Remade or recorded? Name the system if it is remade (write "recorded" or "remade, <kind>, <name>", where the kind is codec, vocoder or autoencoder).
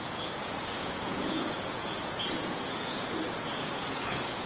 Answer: remade, vocoder, Vocos